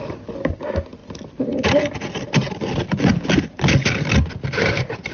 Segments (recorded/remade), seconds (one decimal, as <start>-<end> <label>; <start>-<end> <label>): 0.0-5.1 recorded